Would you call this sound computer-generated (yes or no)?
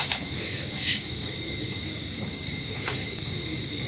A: yes